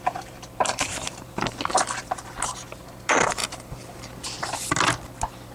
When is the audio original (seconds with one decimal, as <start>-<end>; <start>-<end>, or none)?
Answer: 0.0-5.5